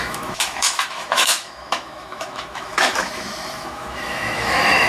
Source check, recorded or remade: remade